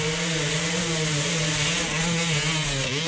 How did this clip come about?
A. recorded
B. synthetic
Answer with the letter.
A